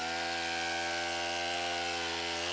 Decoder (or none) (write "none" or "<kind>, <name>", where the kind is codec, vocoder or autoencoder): none